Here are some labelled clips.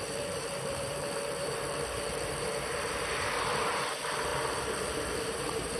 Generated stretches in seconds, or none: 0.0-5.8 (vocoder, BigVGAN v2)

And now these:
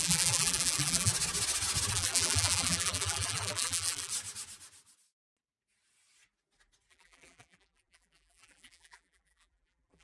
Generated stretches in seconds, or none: 0.0-1.1 (vocoder, BigVGAN v2); 1.9-4.1; 6.9-10.0

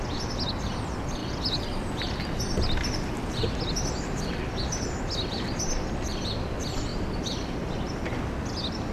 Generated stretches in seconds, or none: 6.9-8.1 (vocoder, BigVGAN v2)

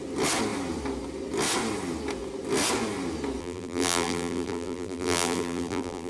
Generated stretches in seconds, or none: 3.4-6.1 (vocoder, BigVGAN v2)

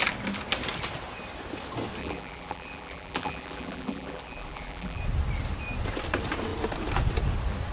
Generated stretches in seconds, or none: 2.0-5.0 (vocoder, BigVGAN v2)